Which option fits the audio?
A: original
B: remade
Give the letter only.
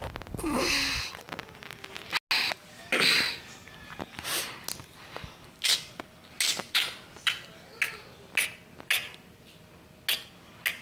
A